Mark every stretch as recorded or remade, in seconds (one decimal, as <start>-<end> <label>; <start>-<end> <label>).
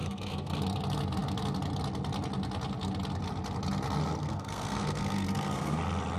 0.0-0.6 remade; 0.6-4.2 recorded; 4.2-5.8 remade; 5.8-6.2 recorded